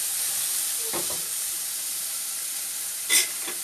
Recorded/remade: recorded